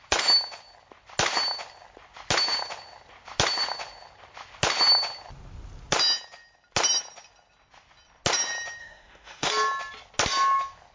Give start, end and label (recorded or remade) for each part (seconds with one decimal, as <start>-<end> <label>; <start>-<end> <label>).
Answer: 0.0-8.8 recorded; 8.8-9.5 remade; 9.5-10.9 recorded